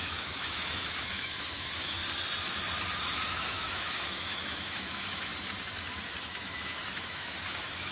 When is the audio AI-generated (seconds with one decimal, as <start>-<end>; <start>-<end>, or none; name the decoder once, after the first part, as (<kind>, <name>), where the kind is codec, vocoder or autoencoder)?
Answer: 0.0-2.0 (autoencoder, DAC-VAE); 3.0-5.3; 6.2-7.9